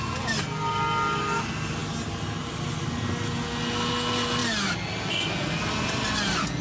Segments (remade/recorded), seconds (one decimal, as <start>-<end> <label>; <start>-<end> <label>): 0.0-6.6 recorded